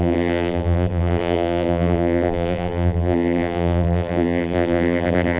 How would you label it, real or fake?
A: fake